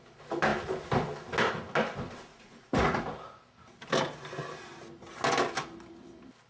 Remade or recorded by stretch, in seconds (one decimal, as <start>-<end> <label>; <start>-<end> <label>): 0.0-2.3 recorded; 2.3-3.0 remade; 3.0-6.5 recorded